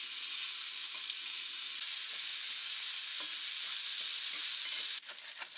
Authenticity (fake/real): real